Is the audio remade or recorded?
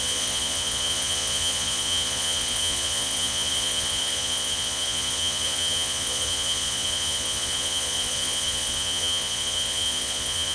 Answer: remade